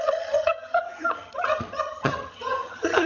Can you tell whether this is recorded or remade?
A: remade